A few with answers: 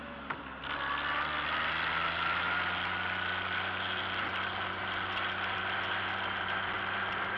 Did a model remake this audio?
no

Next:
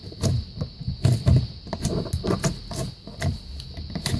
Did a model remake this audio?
no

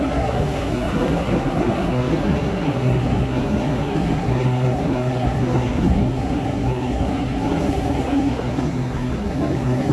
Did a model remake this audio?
yes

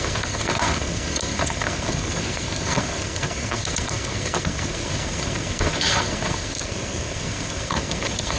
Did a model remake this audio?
yes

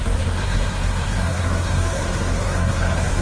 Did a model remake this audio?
yes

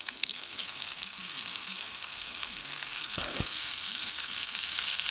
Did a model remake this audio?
yes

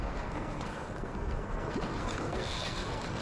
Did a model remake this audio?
yes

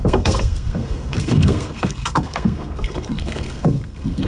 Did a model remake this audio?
yes